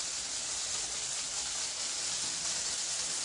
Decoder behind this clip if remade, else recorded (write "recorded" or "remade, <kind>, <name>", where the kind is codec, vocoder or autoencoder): recorded